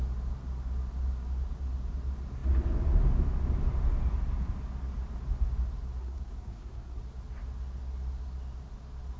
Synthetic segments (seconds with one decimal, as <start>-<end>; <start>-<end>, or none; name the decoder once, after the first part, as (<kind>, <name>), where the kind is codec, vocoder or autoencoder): 6.0-7.0 (codec, SNAC)